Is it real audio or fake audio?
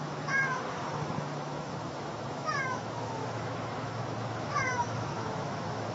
fake